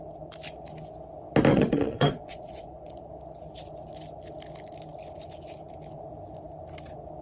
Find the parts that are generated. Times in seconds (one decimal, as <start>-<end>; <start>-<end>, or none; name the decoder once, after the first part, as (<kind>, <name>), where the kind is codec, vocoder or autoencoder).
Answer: 1.5-3.1 (vocoder, Vocos)